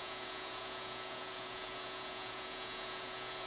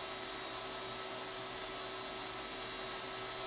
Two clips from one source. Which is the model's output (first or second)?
first